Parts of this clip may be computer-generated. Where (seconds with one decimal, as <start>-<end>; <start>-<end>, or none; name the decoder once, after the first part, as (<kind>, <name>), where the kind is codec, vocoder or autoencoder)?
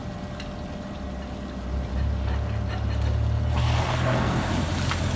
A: 3.6-4.5 (codec, SNAC)